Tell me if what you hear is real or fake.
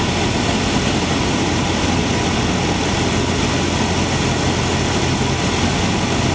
real